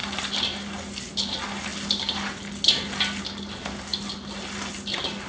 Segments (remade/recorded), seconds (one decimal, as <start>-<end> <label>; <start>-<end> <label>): 0.0-1.0 remade; 1.0-1.7 recorded; 1.7-3.2 remade; 3.2-3.9 recorded; 3.9-4.7 remade; 4.7-5.3 recorded